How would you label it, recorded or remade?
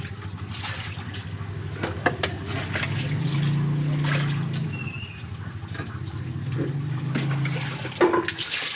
recorded